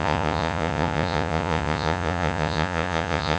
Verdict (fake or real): fake